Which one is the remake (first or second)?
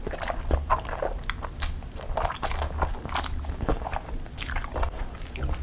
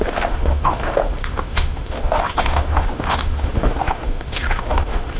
second